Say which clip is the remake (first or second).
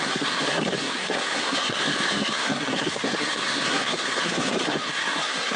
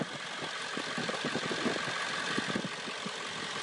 first